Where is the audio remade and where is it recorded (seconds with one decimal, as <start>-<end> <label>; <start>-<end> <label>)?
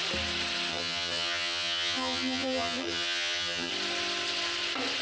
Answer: 0.0-0.7 recorded; 0.7-3.7 remade; 3.7-5.0 recorded